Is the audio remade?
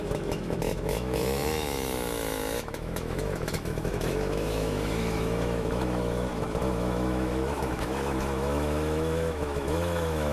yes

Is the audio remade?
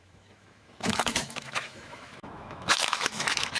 yes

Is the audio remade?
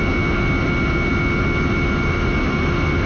no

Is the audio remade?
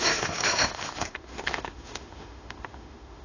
yes